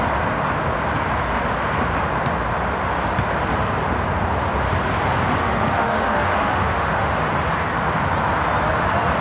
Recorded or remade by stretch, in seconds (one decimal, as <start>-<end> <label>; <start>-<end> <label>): 0.0-5.4 recorded; 5.4-7.1 remade; 7.1-9.2 recorded